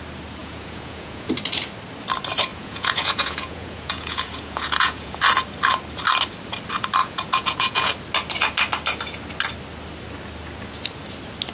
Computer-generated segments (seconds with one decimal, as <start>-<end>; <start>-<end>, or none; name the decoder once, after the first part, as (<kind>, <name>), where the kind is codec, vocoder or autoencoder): 0.4-1.3 (vocoder, Vocos); 2.5-5.2; 7.0-7.9